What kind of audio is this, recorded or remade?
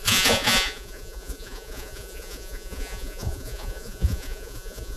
remade